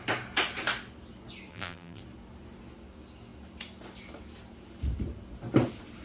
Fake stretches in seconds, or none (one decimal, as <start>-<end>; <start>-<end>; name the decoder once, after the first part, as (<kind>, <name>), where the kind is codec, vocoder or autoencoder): 1.5-2.0 (vocoder, BigVGAN v2)